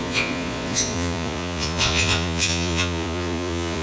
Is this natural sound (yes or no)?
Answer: no